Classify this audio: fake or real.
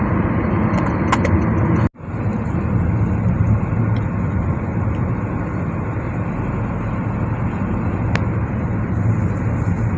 real